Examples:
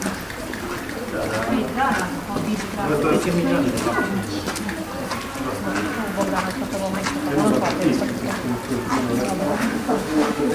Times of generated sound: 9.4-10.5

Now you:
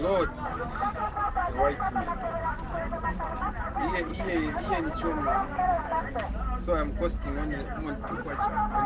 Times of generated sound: 1.4-1.9; 4.1-6.0

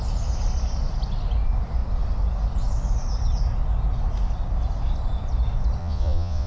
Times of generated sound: 5.8-6.5

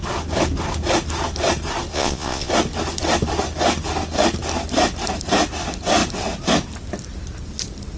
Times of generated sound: 1.9-2.5

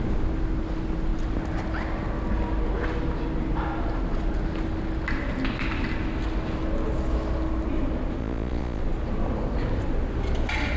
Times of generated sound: 8.2-8.8

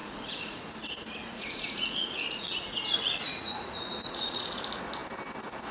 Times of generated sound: 0.0-0.7; 1.2-4.6

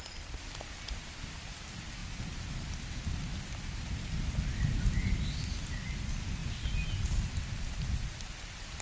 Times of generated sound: none